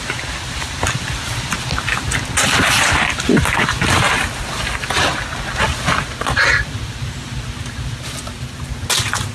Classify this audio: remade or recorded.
recorded